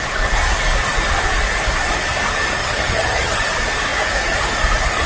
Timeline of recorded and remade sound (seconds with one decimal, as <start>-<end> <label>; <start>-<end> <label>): 0.0-2.6 recorded; 2.6-3.4 remade; 3.4-5.1 recorded